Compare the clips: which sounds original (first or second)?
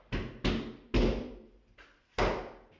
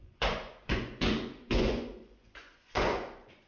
first